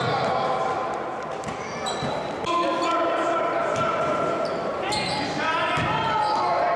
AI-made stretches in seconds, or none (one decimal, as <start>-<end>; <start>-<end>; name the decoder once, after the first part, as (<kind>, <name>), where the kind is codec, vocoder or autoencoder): none